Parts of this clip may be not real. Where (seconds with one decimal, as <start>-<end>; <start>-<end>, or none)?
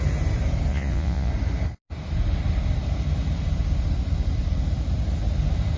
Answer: 0.7-1.3